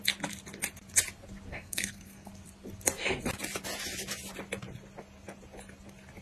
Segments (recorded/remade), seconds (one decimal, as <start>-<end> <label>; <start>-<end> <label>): 0.0-1.5 recorded; 1.5-2.3 remade; 2.3-6.2 recorded